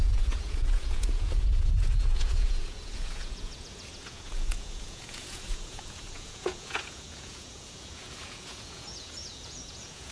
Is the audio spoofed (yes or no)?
yes